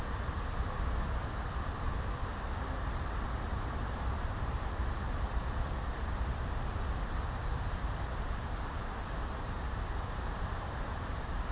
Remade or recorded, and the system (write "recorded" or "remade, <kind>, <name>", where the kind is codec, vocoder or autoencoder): recorded